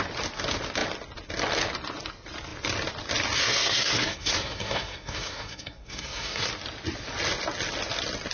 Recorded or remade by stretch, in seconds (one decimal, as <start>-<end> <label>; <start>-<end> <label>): 0.0-3.4 recorded; 3.4-6.5 remade; 6.5-8.3 recorded